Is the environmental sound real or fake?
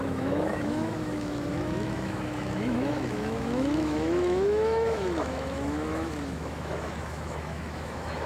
fake